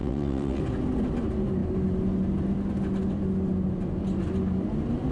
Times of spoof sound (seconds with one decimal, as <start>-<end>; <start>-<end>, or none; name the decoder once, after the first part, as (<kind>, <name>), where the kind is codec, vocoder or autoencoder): 0.0-0.6 (vocoder, WaveNeXt)